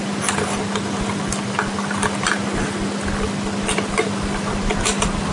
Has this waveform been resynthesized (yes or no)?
no